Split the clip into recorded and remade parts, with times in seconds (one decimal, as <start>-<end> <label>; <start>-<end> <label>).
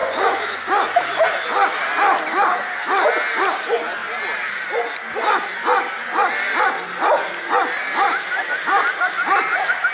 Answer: 0.0-1.0 remade; 1.0-9.9 recorded